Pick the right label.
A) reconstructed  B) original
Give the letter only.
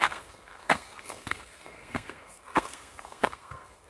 A